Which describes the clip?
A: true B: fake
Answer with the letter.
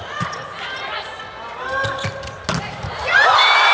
A